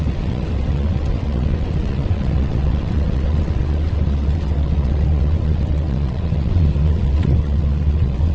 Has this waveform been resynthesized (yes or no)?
yes